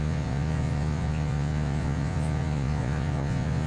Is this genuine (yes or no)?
no